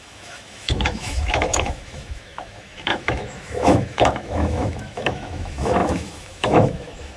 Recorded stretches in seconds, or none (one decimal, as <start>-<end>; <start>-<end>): none